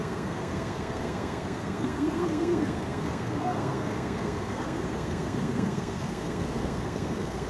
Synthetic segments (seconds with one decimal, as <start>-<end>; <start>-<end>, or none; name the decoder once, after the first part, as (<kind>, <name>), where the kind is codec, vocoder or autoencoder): 0.0-7.5 (codec, SNAC)